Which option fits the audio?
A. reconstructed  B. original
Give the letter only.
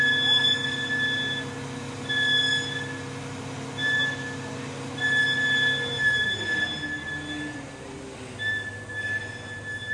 B